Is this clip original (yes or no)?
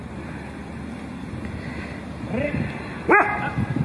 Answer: yes